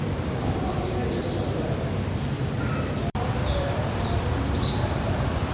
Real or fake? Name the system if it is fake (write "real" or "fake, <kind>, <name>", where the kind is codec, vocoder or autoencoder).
fake, vocoder, BigVGAN v2